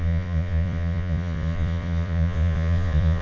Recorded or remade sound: remade